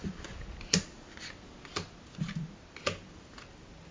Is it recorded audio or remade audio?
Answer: recorded